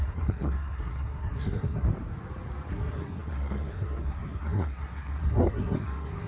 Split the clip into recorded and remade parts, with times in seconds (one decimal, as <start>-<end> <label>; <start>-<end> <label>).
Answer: 0.0-1.9 remade; 1.9-2.7 recorded; 2.7-6.3 remade